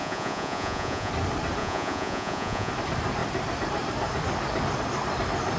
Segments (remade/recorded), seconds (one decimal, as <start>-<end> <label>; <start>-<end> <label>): 0.0-1.1 remade; 1.1-1.6 recorded; 1.6-2.7 remade; 2.7-5.6 recorded